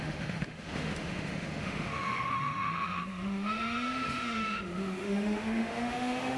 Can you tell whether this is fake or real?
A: fake